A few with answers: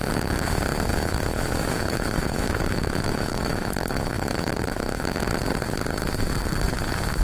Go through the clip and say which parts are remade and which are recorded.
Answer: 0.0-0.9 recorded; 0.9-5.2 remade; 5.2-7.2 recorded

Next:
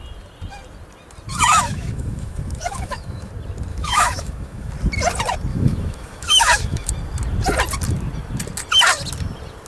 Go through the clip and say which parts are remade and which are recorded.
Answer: 0.0-1.3 recorded; 1.3-3.3 remade; 3.3-3.7 recorded; 3.7-4.7 remade; 4.7-5.5 recorded; 5.5-6.9 remade; 6.9-9.7 recorded

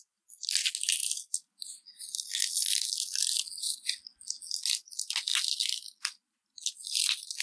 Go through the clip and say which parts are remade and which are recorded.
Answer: 0.0-7.4 recorded

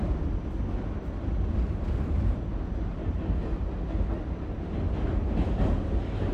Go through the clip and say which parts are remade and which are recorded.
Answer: 0.0-6.3 recorded

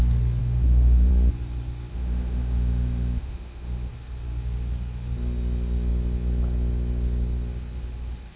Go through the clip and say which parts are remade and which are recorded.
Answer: 0.0-0.4 recorded; 0.4-1.1 remade; 1.1-1.9 recorded; 1.9-3.9 remade; 3.9-8.4 recorded